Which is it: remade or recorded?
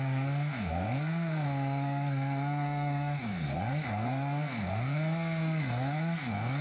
remade